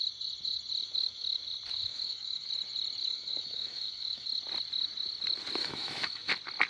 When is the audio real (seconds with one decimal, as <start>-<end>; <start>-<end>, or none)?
0.0-0.8; 1.4-1.8; 2.5-3.0; 4.4-5.6; 6.3-6.7